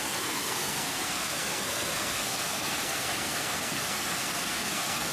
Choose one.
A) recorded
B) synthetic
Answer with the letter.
B